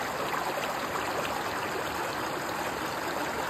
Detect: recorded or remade recorded